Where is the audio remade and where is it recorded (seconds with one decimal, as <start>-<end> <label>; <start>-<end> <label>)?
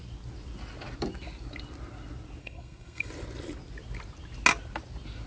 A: 0.0-2.4 recorded; 2.4-3.1 remade; 3.1-5.3 recorded